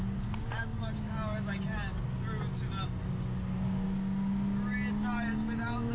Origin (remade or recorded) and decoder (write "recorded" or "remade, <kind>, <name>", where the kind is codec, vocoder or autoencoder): recorded